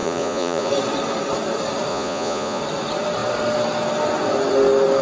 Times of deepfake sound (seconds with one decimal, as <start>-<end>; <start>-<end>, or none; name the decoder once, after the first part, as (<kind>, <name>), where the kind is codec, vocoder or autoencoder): 0.0-0.7 (vocoder, Vocos); 1.9-2.6